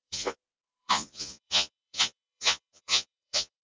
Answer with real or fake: fake